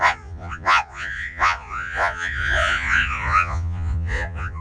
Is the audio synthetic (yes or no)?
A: yes